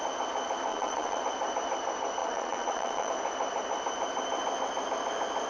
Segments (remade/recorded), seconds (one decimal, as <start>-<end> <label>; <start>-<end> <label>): 0.0-0.7 recorded; 0.7-1.2 remade; 1.2-2.2 recorded; 2.2-3.1 remade; 3.1-5.5 recorded